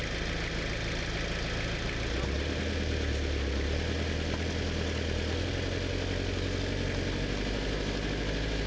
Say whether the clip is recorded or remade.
recorded